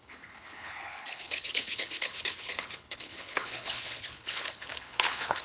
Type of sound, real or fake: fake